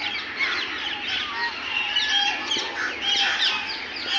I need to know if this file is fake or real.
real